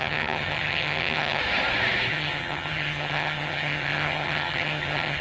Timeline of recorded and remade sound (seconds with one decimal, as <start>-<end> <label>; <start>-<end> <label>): 0.0-1.4 remade; 1.4-2.1 recorded; 2.1-5.2 remade